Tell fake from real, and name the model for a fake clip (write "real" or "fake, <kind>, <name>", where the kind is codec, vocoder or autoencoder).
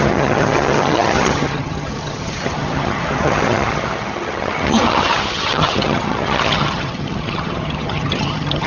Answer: fake, vocoder, HiFi-GAN